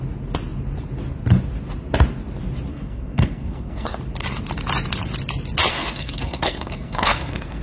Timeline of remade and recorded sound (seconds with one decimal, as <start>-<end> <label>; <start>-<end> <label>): 0.0-2.7 recorded; 2.7-4.0 remade; 4.0-5.7 recorded; 5.7-7.6 remade